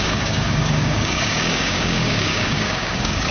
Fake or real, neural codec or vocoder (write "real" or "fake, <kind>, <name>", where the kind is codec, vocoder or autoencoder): fake, codec, DAC